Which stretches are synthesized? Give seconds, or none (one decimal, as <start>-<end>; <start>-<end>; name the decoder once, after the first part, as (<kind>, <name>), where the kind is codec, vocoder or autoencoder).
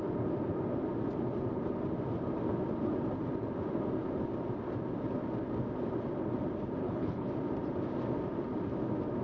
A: 6.8-7.3 (codec, HILCodec)